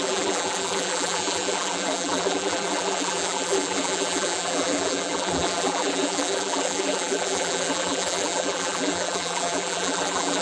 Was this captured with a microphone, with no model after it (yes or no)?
no